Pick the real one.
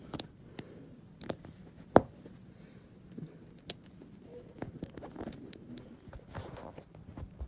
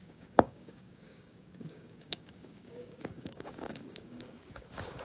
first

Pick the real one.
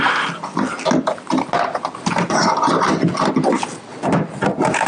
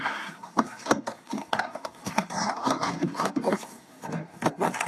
first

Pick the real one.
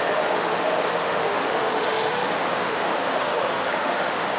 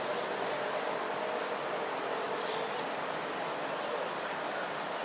second